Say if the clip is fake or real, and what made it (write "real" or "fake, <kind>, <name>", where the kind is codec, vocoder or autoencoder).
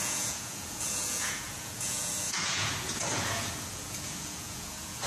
fake, vocoder, Vocos